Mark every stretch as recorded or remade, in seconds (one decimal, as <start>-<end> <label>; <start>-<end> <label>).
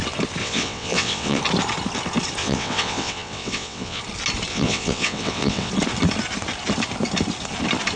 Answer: 0.0-0.4 recorded; 0.4-1.4 remade; 1.4-2.4 recorded; 2.4-4.0 remade; 4.0-4.5 recorded; 4.5-5.7 remade; 5.7-8.0 recorded